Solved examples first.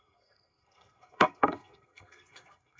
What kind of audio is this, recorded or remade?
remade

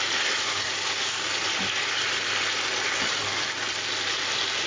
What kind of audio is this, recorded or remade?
recorded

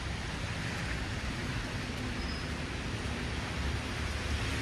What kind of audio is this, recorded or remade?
remade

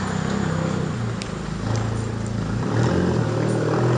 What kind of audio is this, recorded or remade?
recorded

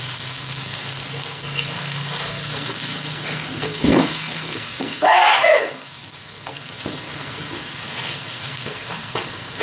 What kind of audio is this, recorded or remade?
remade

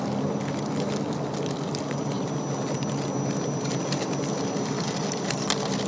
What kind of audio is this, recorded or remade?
recorded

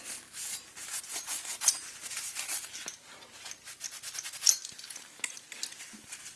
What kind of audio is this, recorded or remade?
recorded